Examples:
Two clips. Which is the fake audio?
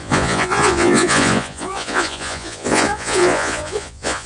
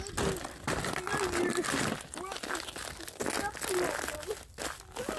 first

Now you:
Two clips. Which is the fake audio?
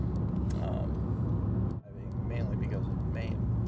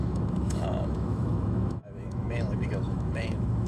second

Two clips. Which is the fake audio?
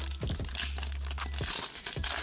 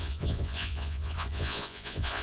second